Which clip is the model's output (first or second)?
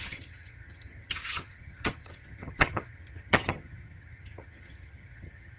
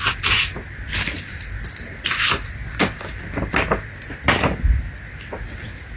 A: first